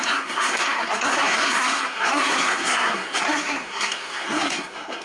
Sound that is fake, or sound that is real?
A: fake